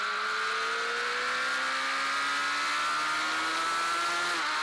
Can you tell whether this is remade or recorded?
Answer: recorded